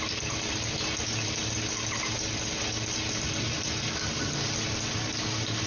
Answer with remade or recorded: recorded